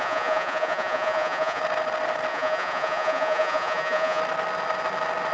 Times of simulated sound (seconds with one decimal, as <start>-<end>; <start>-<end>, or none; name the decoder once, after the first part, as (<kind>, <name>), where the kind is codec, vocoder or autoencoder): 0.0-1.6 (vocoder, Vocos); 2.3-4.2